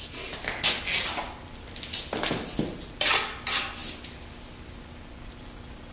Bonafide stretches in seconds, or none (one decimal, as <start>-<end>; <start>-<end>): 0.0-5.9